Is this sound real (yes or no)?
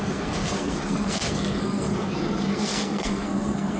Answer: no